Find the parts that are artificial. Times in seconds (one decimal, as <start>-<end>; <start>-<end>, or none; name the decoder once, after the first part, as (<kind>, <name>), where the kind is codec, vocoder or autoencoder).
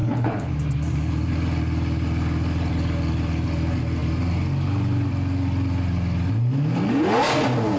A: 0.0-0.5 (codec, HILCodec)